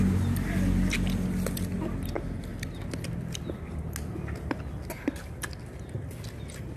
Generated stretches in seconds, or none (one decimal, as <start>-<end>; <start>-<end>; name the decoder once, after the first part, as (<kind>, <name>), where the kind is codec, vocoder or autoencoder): none